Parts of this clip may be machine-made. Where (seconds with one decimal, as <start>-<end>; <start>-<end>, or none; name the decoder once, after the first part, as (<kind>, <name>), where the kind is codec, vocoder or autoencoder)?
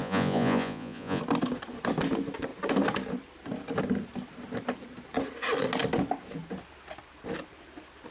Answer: 0.0-1.2 (vocoder, Vocos)